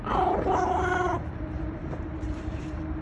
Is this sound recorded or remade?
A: remade